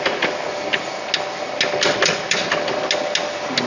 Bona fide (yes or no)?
yes